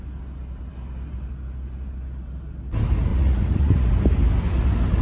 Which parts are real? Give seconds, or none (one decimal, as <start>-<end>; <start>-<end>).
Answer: 0.0-3.1; 3.9-5.0